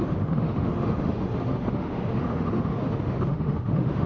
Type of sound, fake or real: fake